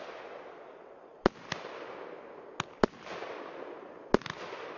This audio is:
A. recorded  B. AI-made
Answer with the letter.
A